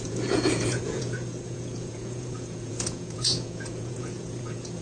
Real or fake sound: fake